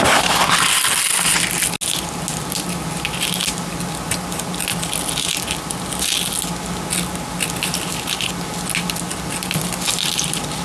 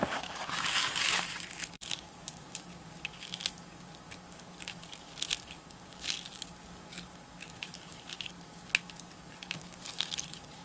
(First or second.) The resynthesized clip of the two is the second